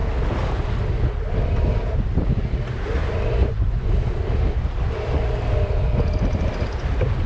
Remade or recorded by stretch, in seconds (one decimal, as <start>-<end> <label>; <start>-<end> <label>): 0.0-3.4 recorded; 3.4-3.9 remade; 3.9-7.3 recorded